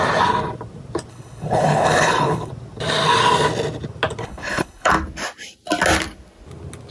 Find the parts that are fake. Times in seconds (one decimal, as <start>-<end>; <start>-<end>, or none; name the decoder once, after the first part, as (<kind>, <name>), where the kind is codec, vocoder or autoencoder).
1.1-2.5 (codec, HILCodec); 4.2-4.9